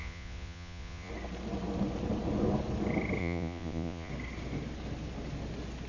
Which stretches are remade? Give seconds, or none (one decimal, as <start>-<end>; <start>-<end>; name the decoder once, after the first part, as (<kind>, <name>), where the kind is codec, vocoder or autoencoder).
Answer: 0.0-1.1 (vocoder, Vocos); 3.2-4.1